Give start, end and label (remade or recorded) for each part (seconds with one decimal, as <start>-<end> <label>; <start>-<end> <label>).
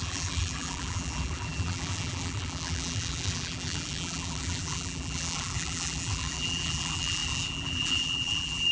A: 0.0-8.7 remade